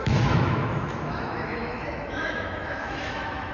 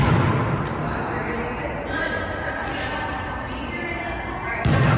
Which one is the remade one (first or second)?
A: first